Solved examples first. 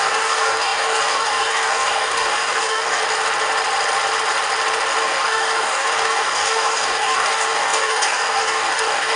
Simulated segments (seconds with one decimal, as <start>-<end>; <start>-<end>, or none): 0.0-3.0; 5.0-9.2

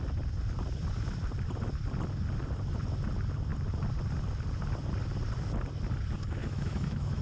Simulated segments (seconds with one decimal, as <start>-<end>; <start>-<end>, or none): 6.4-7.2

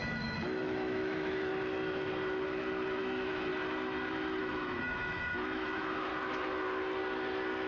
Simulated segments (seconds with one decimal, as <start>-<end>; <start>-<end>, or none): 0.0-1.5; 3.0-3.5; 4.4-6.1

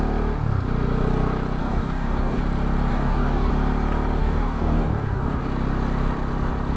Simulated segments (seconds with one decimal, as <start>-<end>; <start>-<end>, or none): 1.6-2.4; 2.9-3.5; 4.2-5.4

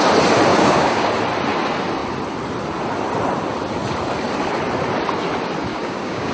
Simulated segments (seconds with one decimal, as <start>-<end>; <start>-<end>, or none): 0.5-1.1; 5.7-6.3

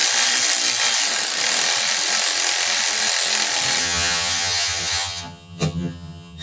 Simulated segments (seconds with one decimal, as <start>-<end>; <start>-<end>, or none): 3.8-6.4

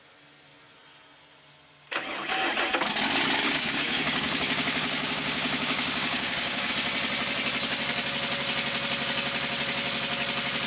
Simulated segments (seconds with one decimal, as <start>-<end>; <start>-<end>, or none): 3.4-6.7